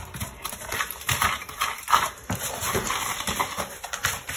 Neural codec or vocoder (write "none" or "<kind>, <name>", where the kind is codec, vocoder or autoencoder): vocoder, BigVGAN v2